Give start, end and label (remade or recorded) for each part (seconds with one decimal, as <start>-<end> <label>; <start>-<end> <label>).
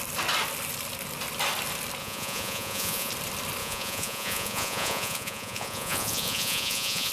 0.0-2.0 recorded; 2.0-3.1 remade; 3.1-3.6 recorded; 3.6-7.1 remade